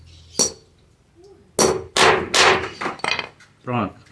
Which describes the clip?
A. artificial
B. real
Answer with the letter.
B